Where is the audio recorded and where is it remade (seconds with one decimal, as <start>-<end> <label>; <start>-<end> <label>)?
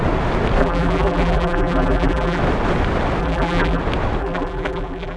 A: 0.0-0.6 recorded; 0.6-2.4 remade; 2.4-3.2 recorded; 3.2-3.8 remade; 3.8-4.2 recorded; 4.2-5.2 remade